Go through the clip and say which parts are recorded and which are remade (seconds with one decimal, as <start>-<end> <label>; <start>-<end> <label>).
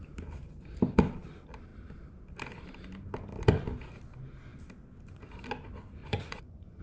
0.0-6.0 recorded; 6.0-6.8 remade